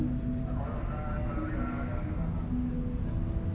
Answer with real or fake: real